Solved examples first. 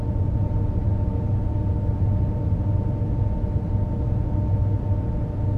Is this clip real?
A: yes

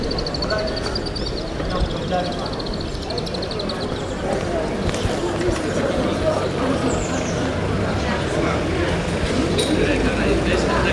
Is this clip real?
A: yes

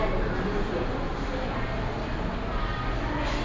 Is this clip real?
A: yes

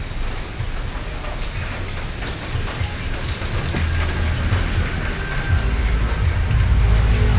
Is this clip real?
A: yes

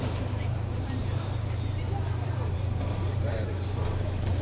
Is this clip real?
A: no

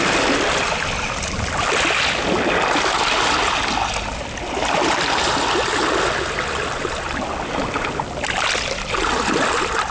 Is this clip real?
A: yes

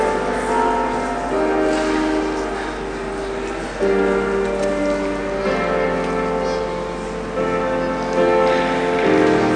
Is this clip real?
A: yes